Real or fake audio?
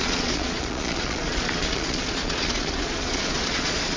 fake